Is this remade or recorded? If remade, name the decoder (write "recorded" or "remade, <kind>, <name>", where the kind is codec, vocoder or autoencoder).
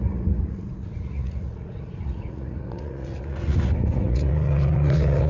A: remade, vocoder, Vocos